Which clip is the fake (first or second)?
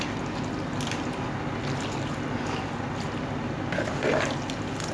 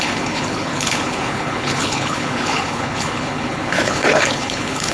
second